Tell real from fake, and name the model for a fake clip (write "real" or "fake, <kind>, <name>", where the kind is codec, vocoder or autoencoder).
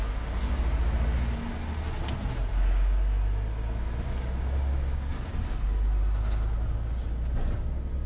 real